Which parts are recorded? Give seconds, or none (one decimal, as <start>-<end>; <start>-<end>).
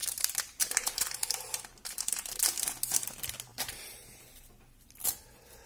2.4-3.5; 4.2-5.7